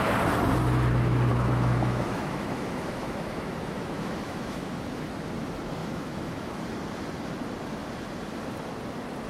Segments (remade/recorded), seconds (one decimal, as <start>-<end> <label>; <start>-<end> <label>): 0.0-1.3 recorded; 1.3-5.1 remade; 5.1-5.8 recorded; 5.8-6.6 remade; 6.6-9.3 recorded